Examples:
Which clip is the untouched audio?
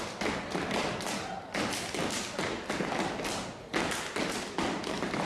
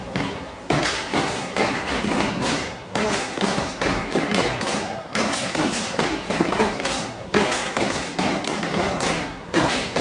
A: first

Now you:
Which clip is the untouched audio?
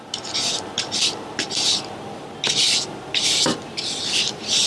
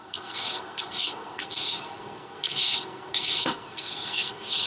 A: first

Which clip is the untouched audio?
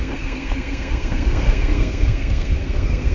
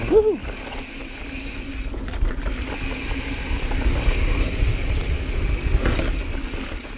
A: second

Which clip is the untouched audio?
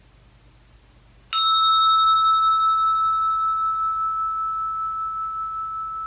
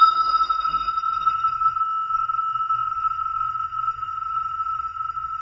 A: first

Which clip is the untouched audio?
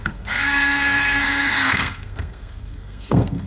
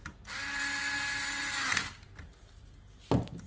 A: second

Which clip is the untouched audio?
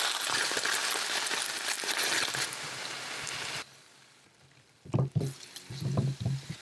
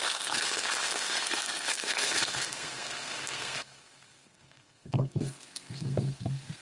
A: first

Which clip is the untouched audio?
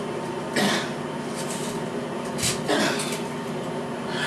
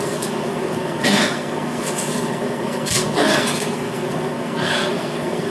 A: first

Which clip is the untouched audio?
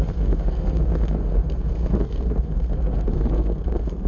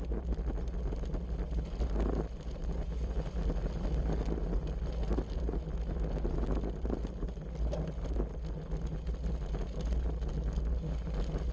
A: second